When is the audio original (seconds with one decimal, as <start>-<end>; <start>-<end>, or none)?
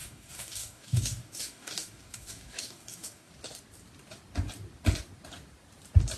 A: 3.3-6.2